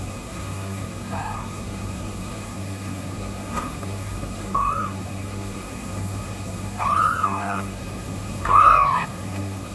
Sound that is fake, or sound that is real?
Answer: fake